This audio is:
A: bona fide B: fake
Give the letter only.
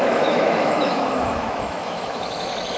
B